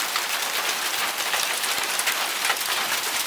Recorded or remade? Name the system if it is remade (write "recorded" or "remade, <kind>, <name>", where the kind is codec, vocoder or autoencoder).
recorded